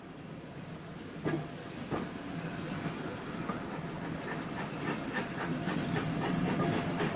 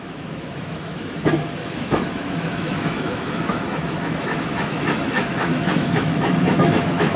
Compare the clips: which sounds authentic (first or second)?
first